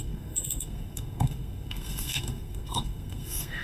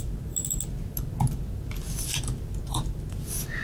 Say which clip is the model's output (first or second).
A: first